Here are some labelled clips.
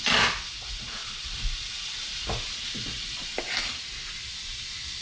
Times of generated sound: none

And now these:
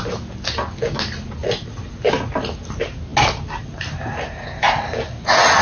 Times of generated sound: none